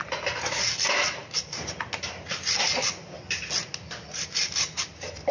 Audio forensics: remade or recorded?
recorded